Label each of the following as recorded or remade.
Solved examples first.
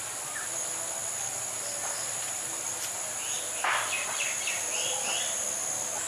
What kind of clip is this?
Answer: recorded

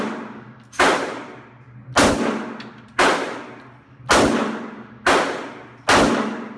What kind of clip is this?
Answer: recorded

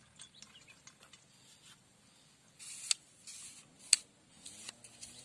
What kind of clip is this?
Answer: recorded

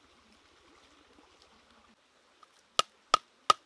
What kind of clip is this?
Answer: recorded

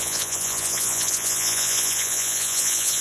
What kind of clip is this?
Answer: remade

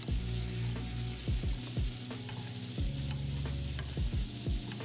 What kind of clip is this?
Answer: recorded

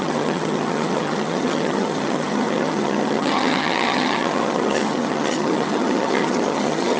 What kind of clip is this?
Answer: remade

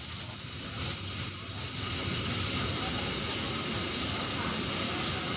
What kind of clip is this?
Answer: recorded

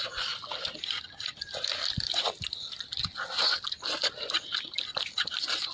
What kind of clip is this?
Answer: recorded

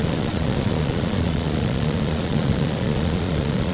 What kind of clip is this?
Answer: remade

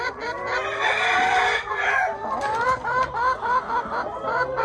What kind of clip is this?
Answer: recorded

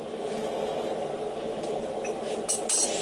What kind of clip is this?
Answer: recorded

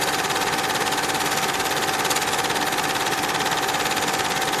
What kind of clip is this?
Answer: recorded